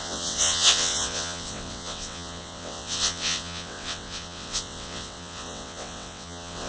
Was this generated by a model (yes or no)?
yes